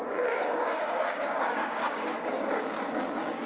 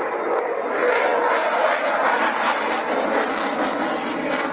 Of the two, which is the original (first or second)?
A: second